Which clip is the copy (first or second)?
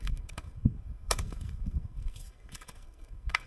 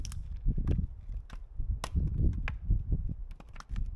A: first